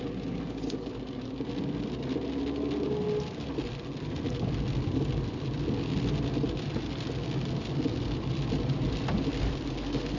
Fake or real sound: real